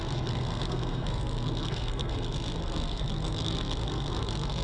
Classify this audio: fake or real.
fake